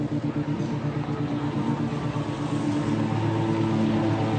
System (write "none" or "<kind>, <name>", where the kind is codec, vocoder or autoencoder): none